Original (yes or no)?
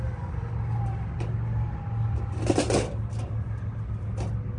yes